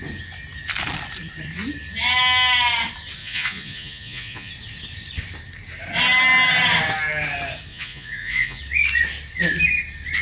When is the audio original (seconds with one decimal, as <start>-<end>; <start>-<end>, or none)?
0.0-3.2; 4.5-7.7; 8.6-10.2